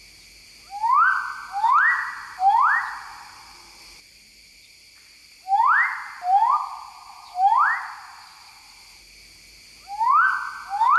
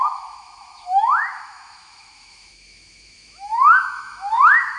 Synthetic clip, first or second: second